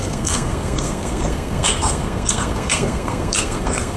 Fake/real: fake